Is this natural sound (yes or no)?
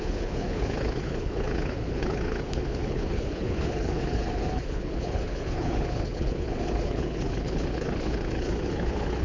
no